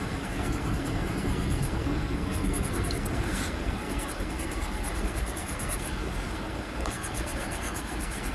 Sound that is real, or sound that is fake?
fake